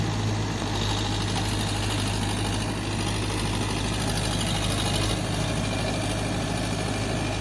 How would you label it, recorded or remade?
recorded